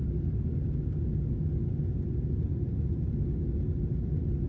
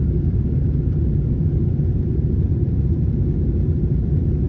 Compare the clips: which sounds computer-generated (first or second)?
second